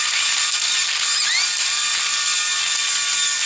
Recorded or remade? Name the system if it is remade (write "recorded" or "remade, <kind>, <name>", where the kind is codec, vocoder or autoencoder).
recorded